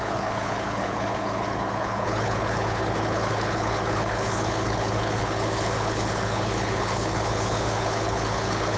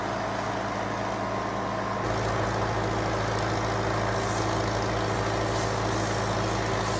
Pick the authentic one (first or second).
second